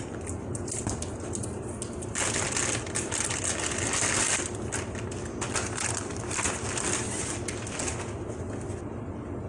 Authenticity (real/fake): real